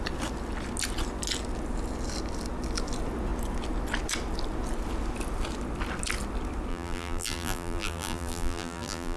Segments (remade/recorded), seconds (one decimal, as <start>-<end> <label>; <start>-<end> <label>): 0.0-6.7 recorded; 6.7-9.2 remade